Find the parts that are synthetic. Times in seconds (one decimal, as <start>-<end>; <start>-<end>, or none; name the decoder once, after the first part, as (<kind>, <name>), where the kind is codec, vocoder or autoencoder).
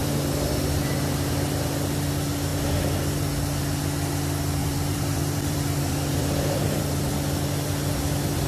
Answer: 0.0-0.5 (vocoder, BigVGAN v2); 4.6-7.1